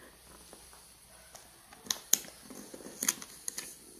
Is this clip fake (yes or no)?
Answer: no